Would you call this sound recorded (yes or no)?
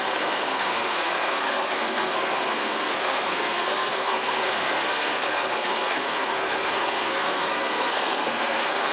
no